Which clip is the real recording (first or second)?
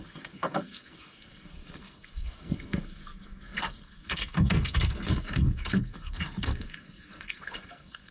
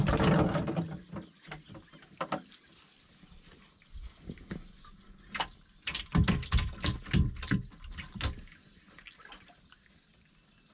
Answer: second